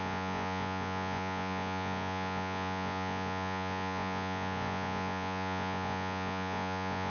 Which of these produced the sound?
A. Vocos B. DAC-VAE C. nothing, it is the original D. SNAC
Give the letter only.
A